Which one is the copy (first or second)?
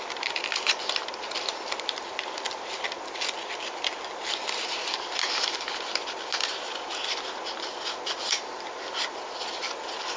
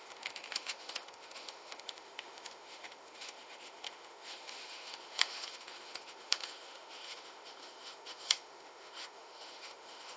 second